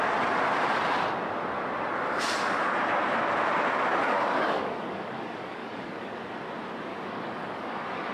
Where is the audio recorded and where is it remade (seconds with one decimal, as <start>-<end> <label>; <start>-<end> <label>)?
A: 0.0-3.9 recorded; 3.9-6.2 remade; 6.2-6.9 recorded; 6.9-8.1 remade

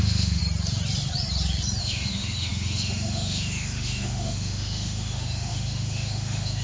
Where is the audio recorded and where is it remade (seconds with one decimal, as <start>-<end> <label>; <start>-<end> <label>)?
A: 0.0-0.4 remade; 0.4-1.8 recorded; 1.8-6.6 remade